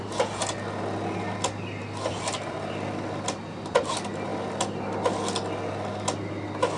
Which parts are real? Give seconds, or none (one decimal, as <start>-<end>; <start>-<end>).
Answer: 0.0-6.8